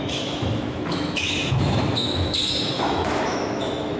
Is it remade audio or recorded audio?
remade